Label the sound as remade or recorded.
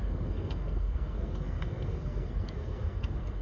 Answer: remade